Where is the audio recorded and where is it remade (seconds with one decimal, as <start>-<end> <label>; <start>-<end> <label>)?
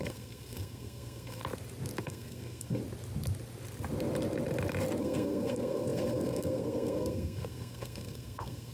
0.0-1.4 remade; 1.4-2.0 recorded; 2.0-2.8 remade; 2.8-5.0 recorded; 5.0-8.7 remade